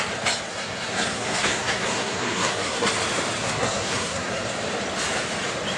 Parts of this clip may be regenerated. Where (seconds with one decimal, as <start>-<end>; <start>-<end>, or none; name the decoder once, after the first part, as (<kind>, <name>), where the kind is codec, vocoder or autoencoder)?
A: 0.5-2.9 (codec, SNAC); 3.4-4.4